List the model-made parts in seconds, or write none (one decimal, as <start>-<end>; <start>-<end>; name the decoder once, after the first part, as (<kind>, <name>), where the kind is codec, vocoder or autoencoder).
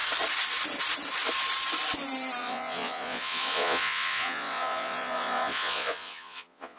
2.4-6.8 (vocoder, Vocos)